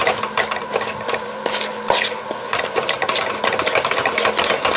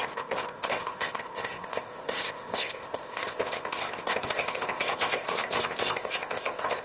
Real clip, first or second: first